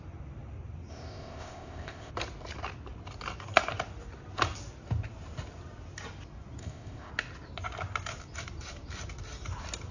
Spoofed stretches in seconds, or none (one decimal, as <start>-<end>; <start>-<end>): 0.9-2.1; 6.6-7.1